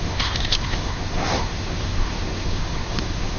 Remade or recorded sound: remade